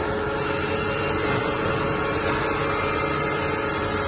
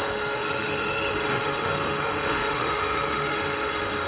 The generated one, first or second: second